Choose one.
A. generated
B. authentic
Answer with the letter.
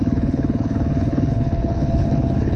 A